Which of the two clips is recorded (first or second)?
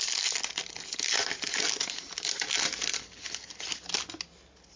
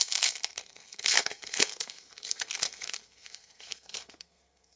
first